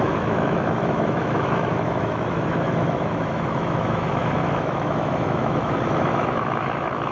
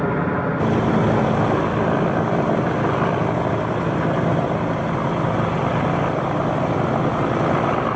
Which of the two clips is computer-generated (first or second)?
first